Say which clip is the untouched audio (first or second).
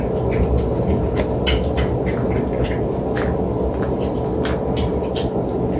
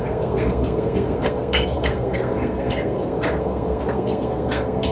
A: first